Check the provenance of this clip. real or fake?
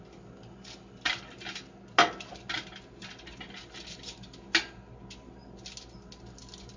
real